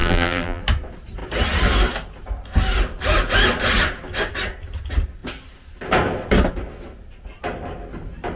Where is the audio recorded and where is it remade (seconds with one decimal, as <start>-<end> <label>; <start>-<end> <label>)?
0.0-0.6 remade; 0.6-8.4 recorded